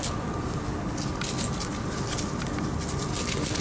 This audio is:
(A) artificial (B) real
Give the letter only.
B